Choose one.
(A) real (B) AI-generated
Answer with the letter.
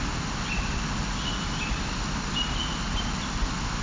A